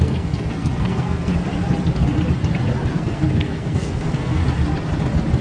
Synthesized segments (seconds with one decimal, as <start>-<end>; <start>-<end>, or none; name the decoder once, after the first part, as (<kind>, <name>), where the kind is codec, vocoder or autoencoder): 0.0-1.3 (codec, SNAC); 2.9-4.4